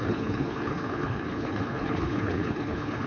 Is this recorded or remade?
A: remade